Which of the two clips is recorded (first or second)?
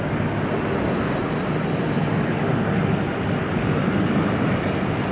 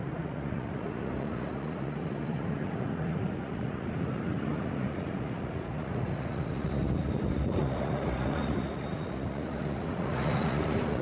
first